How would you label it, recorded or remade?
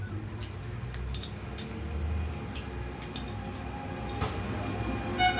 recorded